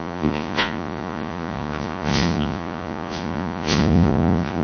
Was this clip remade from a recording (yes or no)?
yes